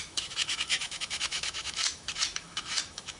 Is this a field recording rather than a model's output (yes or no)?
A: no